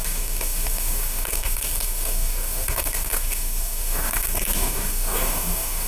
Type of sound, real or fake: fake